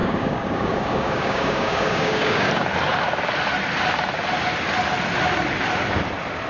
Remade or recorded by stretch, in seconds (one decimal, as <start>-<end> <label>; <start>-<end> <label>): 0.0-2.5 remade; 2.5-6.5 recorded